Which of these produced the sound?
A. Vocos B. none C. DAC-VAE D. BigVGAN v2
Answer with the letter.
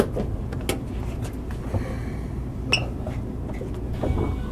B